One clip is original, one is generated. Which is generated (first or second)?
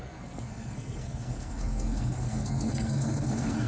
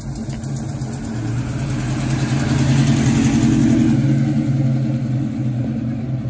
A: first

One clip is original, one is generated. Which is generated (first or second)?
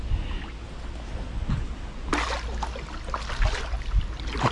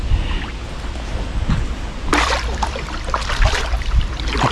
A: second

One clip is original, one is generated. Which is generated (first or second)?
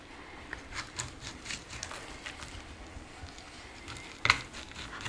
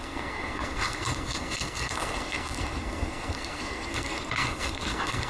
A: second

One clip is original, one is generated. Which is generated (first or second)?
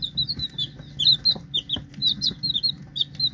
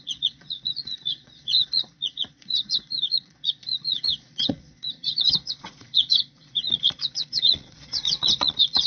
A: second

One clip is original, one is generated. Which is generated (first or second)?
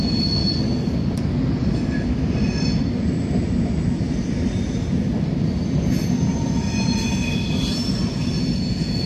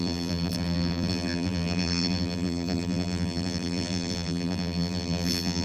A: second